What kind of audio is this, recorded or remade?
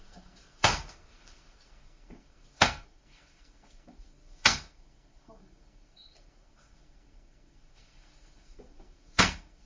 remade